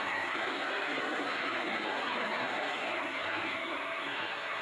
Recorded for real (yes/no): no